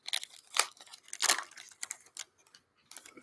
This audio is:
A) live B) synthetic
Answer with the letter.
A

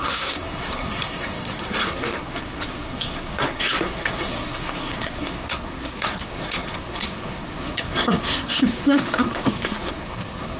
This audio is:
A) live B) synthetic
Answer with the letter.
B